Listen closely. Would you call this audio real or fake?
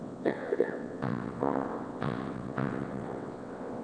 fake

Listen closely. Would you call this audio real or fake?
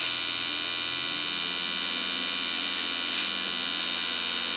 real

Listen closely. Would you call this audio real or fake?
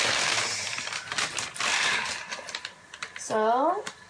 real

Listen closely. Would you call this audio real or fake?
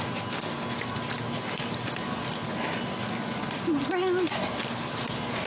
real